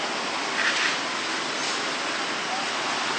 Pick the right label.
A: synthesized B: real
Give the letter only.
B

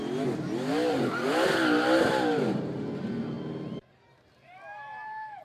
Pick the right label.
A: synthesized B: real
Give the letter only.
B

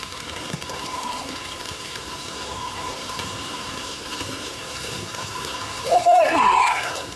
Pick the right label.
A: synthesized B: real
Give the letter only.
A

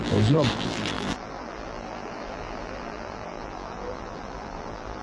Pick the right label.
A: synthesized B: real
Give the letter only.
A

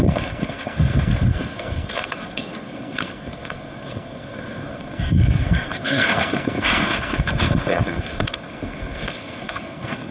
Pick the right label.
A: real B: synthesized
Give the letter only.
B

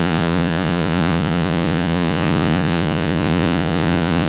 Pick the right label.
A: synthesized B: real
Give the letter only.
A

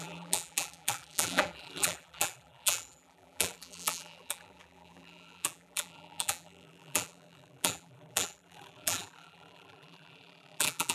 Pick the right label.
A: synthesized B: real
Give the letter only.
A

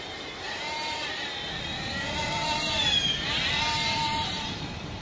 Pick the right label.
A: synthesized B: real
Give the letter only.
A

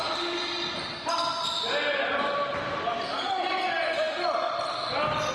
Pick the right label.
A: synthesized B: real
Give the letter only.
B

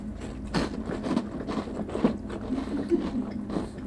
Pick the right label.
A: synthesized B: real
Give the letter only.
B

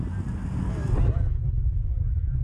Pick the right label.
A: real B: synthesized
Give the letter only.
A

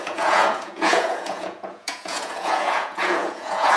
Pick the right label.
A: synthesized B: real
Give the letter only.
A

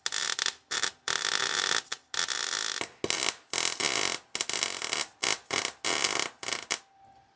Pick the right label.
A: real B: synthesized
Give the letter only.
A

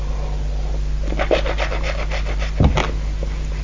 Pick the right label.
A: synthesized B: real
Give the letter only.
B